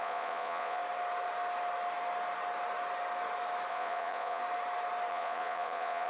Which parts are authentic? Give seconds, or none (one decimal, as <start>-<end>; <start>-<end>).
0.8-3.7; 4.4-5.1